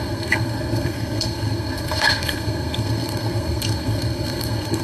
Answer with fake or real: fake